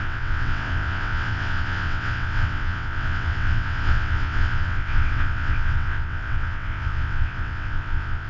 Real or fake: fake